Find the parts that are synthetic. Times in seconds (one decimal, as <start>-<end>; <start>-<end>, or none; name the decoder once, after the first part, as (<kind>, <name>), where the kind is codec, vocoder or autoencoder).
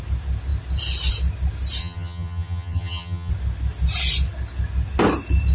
1.8-3.3 (vocoder, HiFi-GAN)